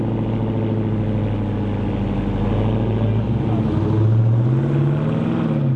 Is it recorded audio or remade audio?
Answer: recorded